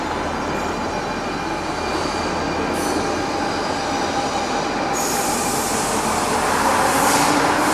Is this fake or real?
real